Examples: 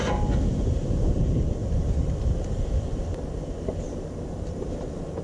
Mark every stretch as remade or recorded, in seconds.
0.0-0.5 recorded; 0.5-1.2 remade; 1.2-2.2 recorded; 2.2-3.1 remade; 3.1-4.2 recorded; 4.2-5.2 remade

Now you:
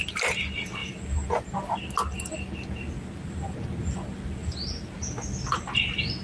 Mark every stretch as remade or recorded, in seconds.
0.0-6.2 recorded